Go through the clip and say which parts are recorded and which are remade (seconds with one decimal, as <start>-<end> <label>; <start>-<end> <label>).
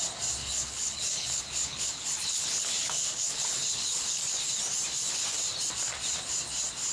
0.0-0.4 recorded; 0.4-4.2 remade; 4.2-6.9 recorded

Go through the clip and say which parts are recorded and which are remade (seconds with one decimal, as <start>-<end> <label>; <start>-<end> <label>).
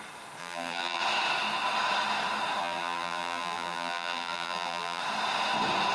0.0-0.4 recorded; 0.4-1.0 remade; 1.0-2.6 recorded; 2.6-5.0 remade; 5.0-5.9 recorded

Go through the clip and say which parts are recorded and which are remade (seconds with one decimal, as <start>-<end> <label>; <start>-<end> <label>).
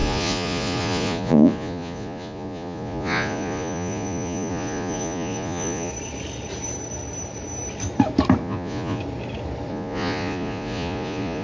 0.0-5.9 remade; 5.9-8.4 recorded; 8.4-9.0 remade; 9.0-9.7 recorded; 9.7-11.4 remade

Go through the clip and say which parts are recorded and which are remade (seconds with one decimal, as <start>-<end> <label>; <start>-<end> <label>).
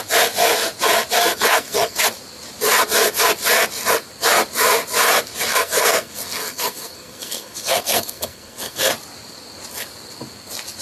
0.0-1.2 recorded; 1.2-2.0 remade; 2.0-5.5 recorded; 5.5-8.9 remade; 8.9-10.8 recorded